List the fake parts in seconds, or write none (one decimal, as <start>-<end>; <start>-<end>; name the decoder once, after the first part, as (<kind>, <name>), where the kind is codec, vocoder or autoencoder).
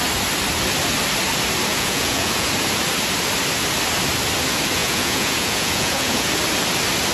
1.7-2.5 (vocoder, Vocos); 4.8-6.3